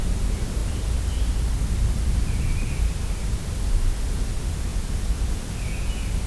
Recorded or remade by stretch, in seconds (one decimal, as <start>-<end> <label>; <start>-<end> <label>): 0.0-0.6 recorded; 0.6-2.8 remade; 2.8-6.3 recorded